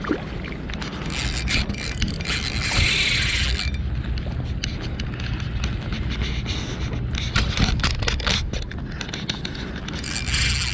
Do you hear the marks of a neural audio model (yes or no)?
no